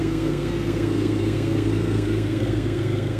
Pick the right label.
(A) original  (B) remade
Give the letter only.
B